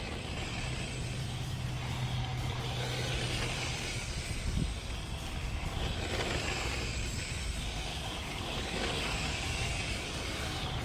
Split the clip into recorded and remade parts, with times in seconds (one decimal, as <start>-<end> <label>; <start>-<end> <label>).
0.0-7.9 recorded; 7.9-10.8 remade